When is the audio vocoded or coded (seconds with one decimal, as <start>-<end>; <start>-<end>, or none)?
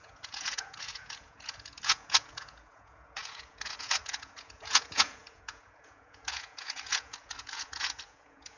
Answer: 0.0-8.6